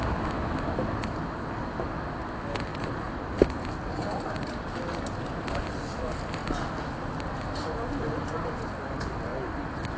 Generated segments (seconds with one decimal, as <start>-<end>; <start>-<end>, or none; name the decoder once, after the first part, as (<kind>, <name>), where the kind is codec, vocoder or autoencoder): 2.7-4.7 (vocoder, BigVGAN v2)